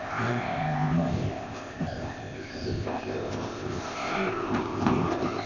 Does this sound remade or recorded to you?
remade